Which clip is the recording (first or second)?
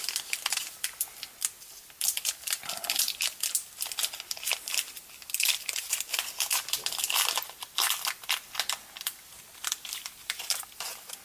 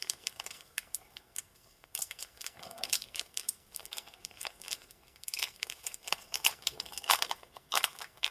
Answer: first